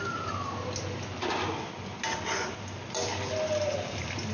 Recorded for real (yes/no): yes